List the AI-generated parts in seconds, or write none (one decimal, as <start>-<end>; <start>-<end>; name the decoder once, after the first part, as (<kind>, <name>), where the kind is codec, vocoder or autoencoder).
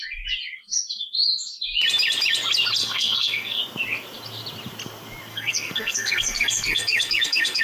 2.8-3.6 (codec, SNAC); 5.3-7.6